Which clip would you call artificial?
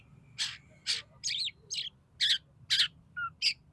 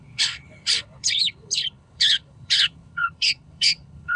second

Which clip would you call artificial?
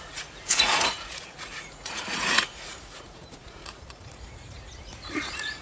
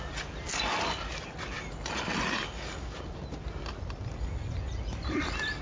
first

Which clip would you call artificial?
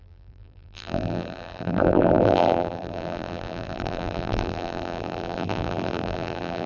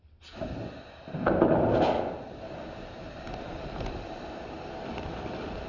first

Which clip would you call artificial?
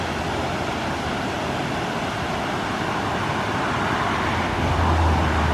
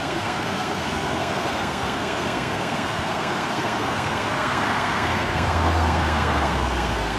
second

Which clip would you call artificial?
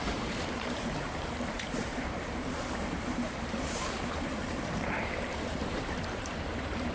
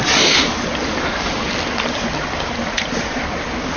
first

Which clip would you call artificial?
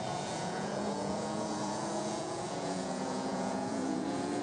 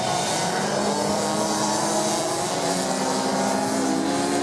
first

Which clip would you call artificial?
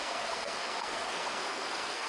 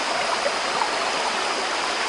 first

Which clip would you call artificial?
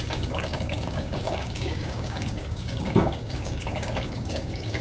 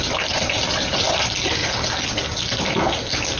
first